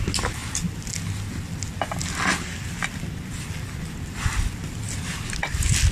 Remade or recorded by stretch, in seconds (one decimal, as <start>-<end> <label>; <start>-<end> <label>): 0.0-5.9 recorded